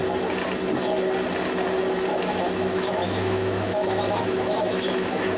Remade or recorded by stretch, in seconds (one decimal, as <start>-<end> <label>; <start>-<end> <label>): 0.0-2.1 recorded; 2.1-5.4 remade